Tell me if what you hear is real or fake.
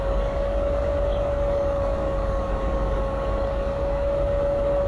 fake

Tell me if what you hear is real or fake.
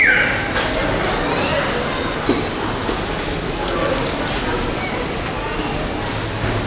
real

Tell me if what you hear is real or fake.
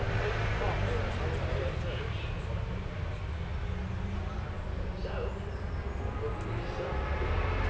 real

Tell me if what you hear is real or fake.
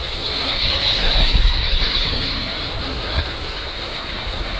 fake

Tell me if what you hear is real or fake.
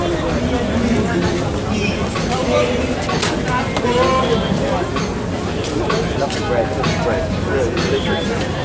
real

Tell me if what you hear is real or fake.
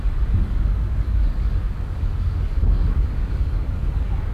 fake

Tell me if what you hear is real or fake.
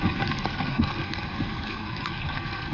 fake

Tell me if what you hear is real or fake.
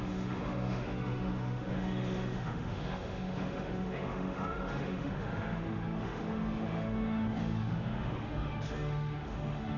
fake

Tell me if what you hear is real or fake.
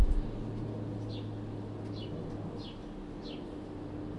real